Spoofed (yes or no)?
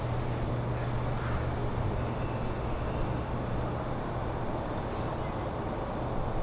no